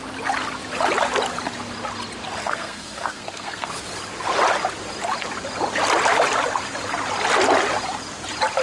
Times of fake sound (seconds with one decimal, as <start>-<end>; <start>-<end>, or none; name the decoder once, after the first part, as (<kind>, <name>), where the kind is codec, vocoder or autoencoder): 2.4-3.7 (codec, SNAC)